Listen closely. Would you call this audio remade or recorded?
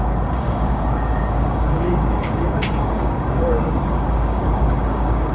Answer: remade